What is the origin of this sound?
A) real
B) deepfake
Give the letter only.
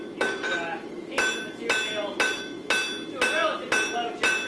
A